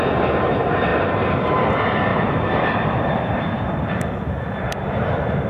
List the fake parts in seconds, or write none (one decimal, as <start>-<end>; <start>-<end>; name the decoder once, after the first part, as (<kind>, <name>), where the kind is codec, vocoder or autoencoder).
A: 0.9-1.7 (vocoder, BigVGAN v2); 2.1-3.8